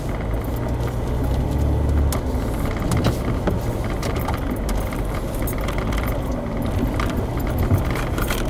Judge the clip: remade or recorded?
recorded